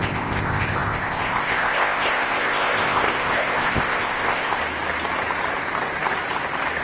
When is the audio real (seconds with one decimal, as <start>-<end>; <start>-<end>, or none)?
4.6-6.8